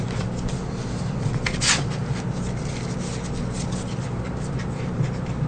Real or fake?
real